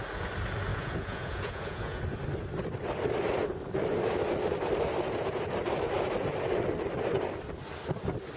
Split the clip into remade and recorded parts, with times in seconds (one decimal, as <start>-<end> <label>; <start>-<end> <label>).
0.0-0.7 recorded; 0.7-2.0 remade; 2.0-8.4 recorded